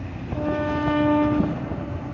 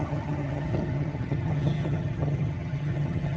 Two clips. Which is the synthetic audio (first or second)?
second